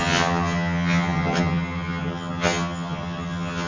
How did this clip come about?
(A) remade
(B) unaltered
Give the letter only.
A